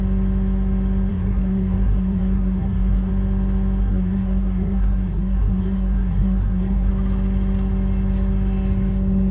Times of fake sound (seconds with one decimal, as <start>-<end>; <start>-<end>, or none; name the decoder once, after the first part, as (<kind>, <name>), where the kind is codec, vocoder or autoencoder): 1.1-3.1 (codec, SNAC); 3.8-6.9